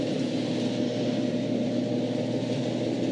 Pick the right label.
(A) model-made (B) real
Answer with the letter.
B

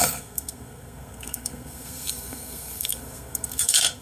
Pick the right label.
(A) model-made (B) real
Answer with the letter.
A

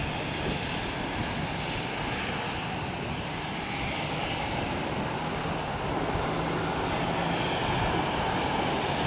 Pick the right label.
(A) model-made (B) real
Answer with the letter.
B